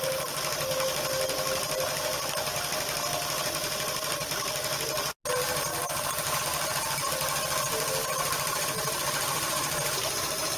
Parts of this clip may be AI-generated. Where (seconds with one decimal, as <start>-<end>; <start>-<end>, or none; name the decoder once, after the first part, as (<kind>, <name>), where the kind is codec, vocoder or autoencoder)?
5.7-6.4 (vocoder, BigVGAN v2); 8.0-10.6